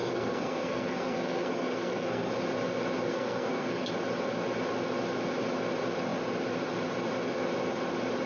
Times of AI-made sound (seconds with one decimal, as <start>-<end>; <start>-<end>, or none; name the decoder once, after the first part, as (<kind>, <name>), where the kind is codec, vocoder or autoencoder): 0.0-2.3 (codec, SNAC); 3.1-3.9